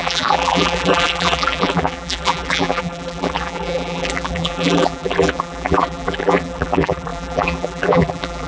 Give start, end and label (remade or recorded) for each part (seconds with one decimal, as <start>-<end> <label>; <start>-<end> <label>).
0.0-8.5 remade